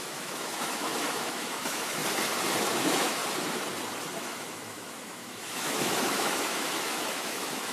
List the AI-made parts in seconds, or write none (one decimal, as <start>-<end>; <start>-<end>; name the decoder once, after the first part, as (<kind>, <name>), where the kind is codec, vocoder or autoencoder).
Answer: 0.0-2.0 (autoencoder, DAC-VAE); 2.6-3.2; 4.2-7.7